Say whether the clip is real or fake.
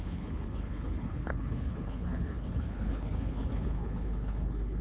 fake